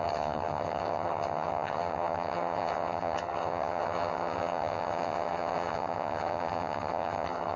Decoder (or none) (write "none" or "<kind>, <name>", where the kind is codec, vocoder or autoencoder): vocoder, HiFi-GAN